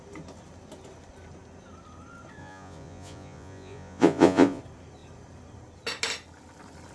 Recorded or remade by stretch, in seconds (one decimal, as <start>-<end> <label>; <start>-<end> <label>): 0.0-2.4 recorded; 2.4-4.6 remade; 4.6-6.9 recorded